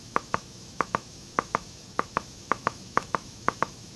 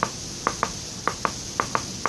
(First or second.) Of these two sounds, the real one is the second